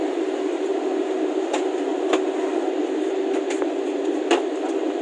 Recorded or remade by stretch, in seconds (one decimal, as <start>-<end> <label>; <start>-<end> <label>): 0.0-5.0 recorded